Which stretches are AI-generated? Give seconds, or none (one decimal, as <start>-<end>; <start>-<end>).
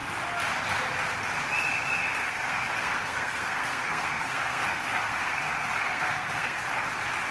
2.2-6.6